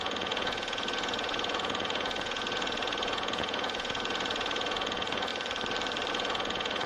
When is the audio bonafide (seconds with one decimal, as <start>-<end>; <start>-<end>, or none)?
5.3-6.1